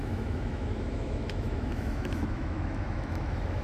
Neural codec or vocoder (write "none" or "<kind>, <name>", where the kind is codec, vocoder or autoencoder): autoencoder, DAC-VAE